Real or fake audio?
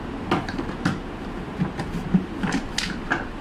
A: real